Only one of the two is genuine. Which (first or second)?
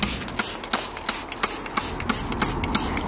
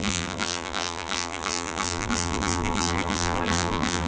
first